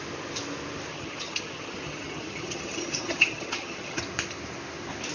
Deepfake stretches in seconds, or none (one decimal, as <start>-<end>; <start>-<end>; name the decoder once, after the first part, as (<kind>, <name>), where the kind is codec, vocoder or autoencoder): 0.9-4.0 (vocoder, HiFi-GAN)